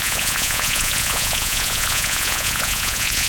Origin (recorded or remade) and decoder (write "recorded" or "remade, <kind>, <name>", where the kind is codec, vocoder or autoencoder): remade, vocoder, Vocos